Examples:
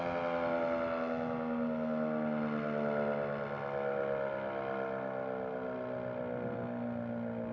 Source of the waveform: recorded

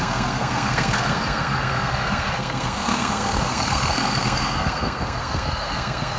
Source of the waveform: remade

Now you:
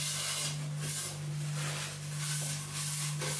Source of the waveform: recorded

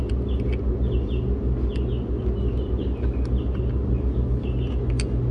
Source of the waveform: recorded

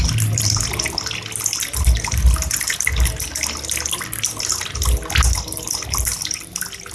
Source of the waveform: recorded